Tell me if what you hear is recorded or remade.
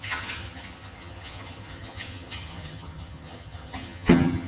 remade